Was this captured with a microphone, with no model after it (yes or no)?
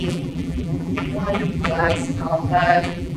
no